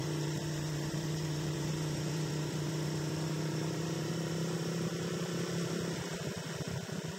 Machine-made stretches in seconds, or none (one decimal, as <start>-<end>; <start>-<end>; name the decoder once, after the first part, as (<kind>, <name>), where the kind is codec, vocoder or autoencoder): 0.0-4.3 (vocoder, BigVGAN v2)